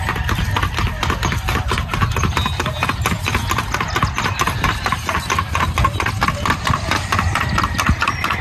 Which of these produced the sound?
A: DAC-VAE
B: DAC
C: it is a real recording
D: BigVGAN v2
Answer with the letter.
C